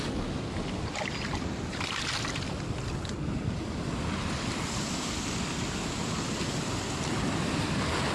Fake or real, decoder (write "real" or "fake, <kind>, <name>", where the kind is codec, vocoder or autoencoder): real